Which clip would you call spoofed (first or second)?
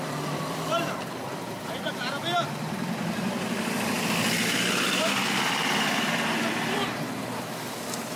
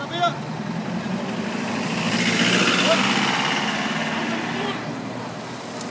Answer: first